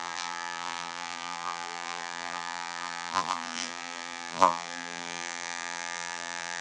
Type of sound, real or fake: fake